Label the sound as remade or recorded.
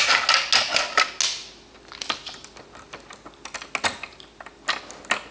recorded